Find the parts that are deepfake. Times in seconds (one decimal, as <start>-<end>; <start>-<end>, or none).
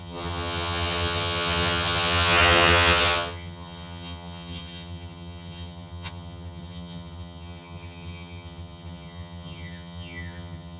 0.0-10.8